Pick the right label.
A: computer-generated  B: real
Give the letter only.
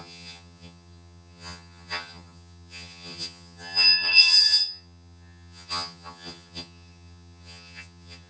A